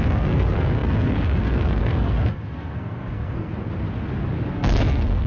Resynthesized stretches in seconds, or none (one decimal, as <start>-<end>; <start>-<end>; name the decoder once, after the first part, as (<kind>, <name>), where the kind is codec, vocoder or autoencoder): 0.0-3.5 (codec, SNAC); 4.5-5.3